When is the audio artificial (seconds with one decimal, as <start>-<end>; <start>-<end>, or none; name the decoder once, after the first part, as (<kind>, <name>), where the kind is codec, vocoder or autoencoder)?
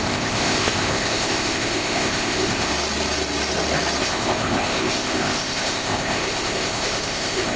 0.0-2.7 (codec, ZipCodec); 4.0-7.6